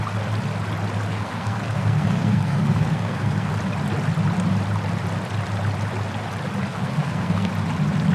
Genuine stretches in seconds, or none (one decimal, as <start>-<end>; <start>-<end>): 0.0-1.1; 3.5-6.7; 7.5-8.1

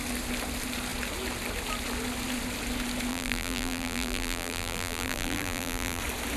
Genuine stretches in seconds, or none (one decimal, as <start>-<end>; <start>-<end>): 0.0-3.1; 6.0-6.4

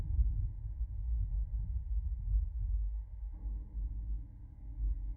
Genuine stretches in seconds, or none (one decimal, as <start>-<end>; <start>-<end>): 0.0-4.4

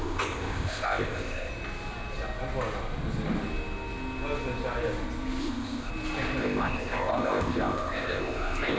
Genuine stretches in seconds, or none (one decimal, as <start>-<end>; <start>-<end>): 1.5-5.4; 5.9-6.4

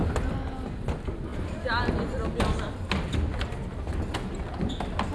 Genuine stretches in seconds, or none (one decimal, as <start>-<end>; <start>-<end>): 0.0-5.1